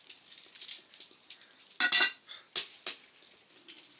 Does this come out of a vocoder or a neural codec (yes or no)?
no